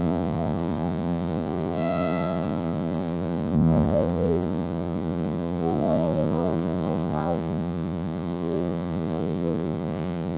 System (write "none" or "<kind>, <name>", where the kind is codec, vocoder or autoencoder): vocoder, Vocos